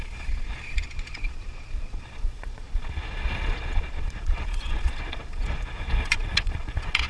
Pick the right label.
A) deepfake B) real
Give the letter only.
A